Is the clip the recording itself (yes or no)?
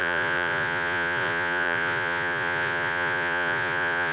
no